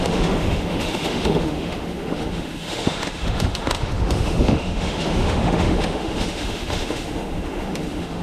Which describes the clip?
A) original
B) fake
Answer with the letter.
B